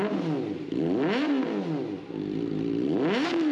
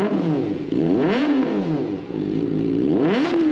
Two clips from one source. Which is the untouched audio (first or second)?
first